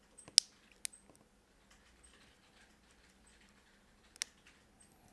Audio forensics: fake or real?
real